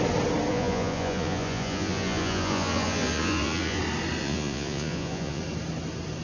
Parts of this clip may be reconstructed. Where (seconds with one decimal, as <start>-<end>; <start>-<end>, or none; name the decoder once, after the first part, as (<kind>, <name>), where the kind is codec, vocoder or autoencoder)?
0.5-3.8 (vocoder, Vocos); 4.2-5.4